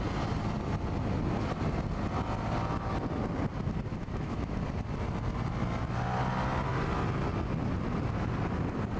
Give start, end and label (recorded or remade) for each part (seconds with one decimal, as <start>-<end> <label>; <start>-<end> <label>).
0.0-3.9 recorded; 3.9-4.6 remade; 4.6-9.0 recorded